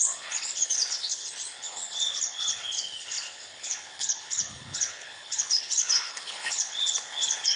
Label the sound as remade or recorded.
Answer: remade